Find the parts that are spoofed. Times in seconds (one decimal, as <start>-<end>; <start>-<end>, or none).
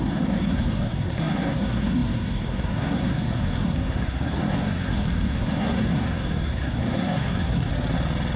0.0-7.7